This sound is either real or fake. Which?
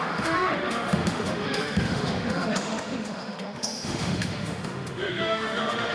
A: fake